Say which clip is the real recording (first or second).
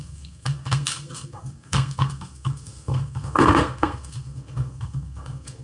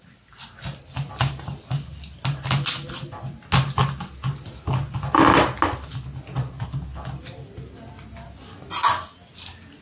second